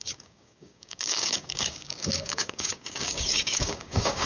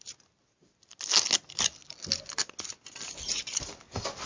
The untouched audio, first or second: second